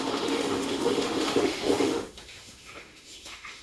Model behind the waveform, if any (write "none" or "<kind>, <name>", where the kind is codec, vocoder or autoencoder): autoencoder, DAC-VAE